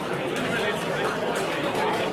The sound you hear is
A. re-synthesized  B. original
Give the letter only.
B